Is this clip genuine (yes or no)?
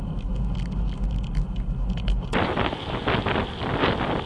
yes